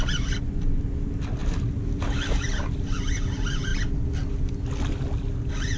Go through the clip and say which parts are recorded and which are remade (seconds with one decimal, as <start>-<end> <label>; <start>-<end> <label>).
0.0-5.8 recorded